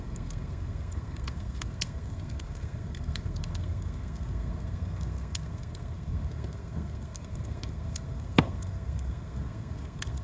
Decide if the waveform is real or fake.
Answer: fake